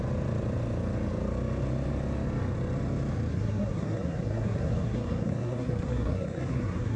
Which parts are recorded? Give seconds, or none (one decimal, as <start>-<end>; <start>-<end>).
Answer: 0.0-3.3